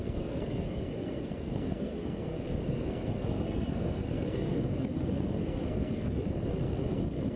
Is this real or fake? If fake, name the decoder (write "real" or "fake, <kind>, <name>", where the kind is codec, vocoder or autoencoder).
fake, codec, SNAC